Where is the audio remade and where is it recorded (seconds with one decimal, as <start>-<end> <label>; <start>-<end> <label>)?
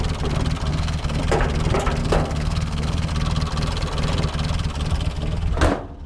0.0-0.7 recorded; 0.7-1.2 remade; 1.2-2.0 recorded; 2.0-3.1 remade; 3.1-6.1 recorded